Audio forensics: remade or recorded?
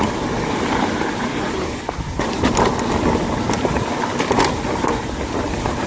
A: recorded